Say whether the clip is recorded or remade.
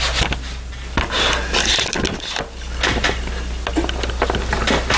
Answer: recorded